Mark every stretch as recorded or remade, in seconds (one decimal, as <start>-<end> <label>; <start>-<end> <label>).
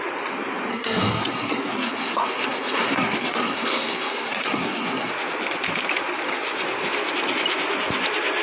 0.0-0.7 recorded; 0.7-5.1 remade; 5.1-8.4 recorded